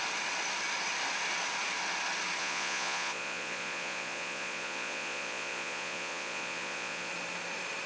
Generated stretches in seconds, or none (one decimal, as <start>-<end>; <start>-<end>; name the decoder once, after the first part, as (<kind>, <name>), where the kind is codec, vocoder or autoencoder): 2.4-7.1 (vocoder, Vocos)